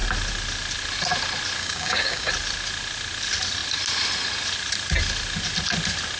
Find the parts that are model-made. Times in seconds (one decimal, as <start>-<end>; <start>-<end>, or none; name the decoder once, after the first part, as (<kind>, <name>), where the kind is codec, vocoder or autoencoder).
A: 1.6-2.3 (codec, DAC)